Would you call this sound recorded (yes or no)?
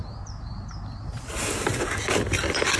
yes